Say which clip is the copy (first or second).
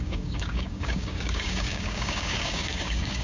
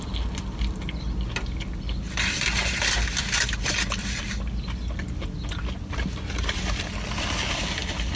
first